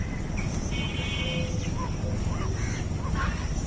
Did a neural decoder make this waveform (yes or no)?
no